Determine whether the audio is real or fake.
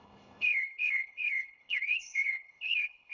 fake